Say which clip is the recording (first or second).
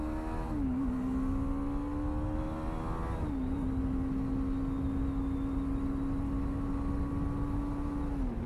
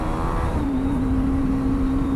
first